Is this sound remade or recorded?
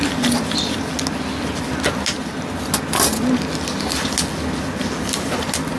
recorded